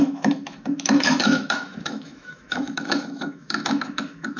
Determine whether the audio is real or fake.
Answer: fake